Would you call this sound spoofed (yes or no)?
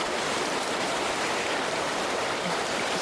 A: yes